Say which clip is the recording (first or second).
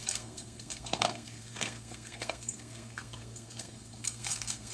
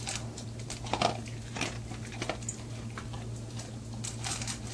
second